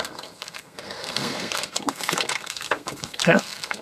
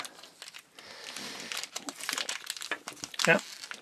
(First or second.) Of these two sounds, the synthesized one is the first